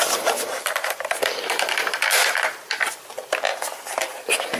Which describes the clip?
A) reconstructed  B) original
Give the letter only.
A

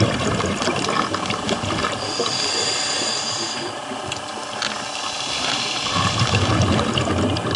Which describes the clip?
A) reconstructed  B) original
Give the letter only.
B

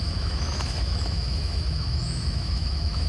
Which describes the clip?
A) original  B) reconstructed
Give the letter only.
B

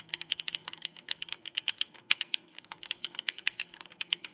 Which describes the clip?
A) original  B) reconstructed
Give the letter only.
B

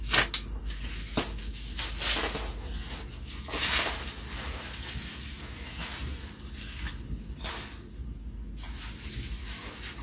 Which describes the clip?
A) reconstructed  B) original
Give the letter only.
B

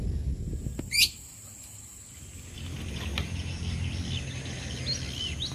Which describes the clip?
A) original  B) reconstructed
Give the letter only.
A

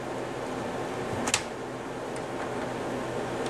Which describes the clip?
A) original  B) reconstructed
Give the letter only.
A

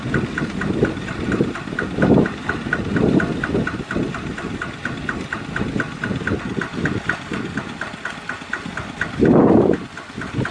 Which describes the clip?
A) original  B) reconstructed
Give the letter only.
B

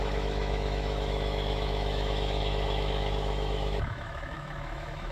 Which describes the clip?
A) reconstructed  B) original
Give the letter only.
A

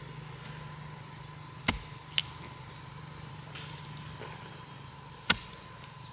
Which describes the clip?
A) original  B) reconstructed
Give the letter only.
A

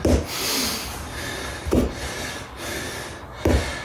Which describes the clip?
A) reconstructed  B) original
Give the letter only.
B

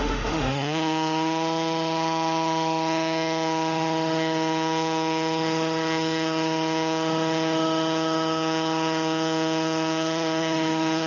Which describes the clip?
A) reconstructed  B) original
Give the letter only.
A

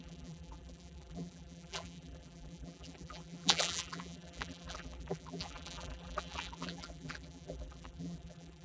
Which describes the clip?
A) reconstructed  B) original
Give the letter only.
A